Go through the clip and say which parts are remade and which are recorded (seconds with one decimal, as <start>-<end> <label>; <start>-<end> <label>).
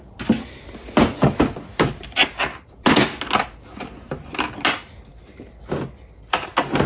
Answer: 0.0-6.9 recorded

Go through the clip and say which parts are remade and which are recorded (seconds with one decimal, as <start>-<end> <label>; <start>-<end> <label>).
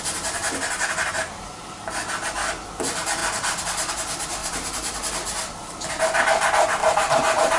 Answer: 0.0-4.4 recorded; 4.4-5.1 remade; 5.1-6.8 recorded; 6.8-7.6 remade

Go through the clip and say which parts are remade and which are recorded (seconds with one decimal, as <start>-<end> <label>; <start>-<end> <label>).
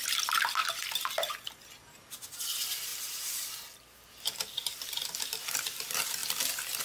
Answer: 0.0-2.9 recorded; 2.9-3.6 remade; 3.6-6.8 recorded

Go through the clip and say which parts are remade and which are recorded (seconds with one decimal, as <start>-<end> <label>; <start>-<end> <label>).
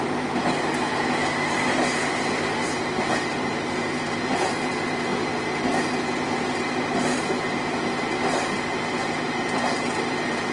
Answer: 0.0-10.5 recorded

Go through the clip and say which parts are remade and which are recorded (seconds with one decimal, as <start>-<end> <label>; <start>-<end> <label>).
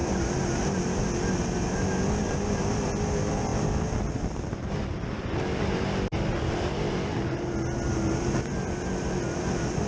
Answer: 0.0-9.9 recorded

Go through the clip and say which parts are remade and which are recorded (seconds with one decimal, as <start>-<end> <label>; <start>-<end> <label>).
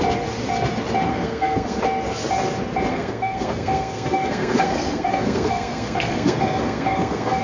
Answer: 0.0-1.1 recorded; 1.1-1.8 remade; 1.8-2.9 recorded; 2.9-7.4 remade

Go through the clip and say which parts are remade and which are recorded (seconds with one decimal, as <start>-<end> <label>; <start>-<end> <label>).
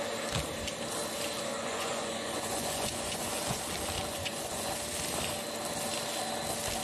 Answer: 0.0-1.5 recorded; 1.5-3.6 remade; 3.6-4.1 recorded; 4.1-4.7 remade; 4.7-6.8 recorded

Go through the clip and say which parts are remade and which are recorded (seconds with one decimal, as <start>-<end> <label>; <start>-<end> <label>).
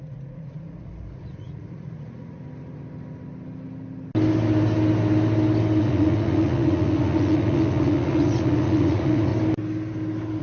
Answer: 0.0-2.4 remade; 2.4-5.8 recorded; 5.8-9.3 remade; 9.3-10.4 recorded